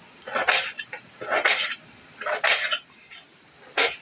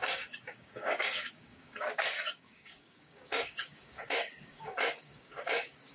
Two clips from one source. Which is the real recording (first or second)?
first